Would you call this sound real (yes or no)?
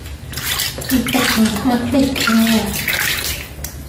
yes